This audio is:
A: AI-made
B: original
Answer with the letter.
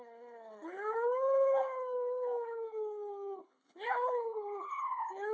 A